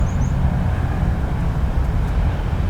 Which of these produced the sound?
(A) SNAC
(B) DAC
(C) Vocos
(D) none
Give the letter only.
D